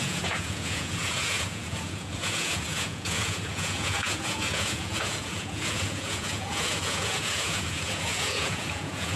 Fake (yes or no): yes